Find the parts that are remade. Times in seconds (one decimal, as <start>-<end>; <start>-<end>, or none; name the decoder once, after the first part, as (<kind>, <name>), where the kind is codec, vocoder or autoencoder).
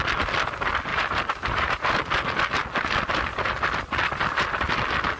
0.9-1.9 (vocoder, BigVGAN v2)